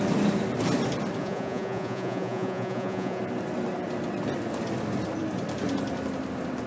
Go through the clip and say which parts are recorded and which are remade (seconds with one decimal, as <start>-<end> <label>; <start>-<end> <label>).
0.0-1.2 recorded; 1.2-3.2 remade; 3.2-6.7 recorded